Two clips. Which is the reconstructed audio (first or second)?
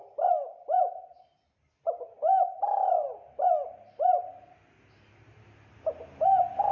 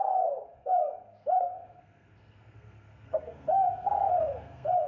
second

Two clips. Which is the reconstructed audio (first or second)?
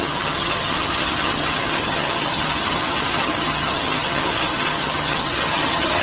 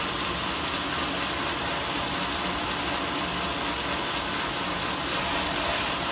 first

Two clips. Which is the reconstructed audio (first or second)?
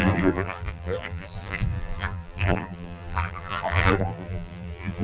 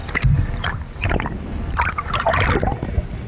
first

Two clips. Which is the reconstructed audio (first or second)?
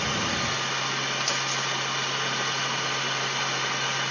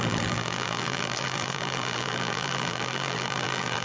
second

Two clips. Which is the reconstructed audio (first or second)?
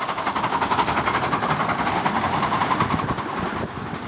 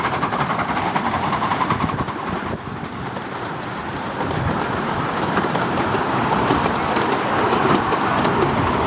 second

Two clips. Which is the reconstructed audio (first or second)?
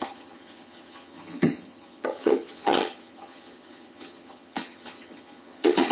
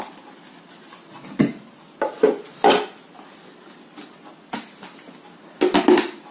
first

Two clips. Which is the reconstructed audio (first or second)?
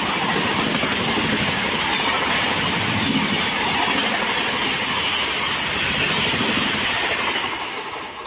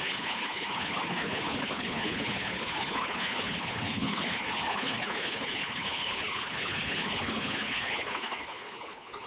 second